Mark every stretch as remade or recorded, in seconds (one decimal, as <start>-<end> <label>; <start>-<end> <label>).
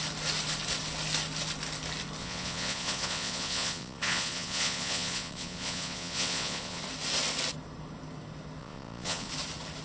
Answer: 0.0-2.2 recorded; 2.2-6.8 remade; 6.8-8.6 recorded; 8.6-9.3 remade; 9.3-9.8 recorded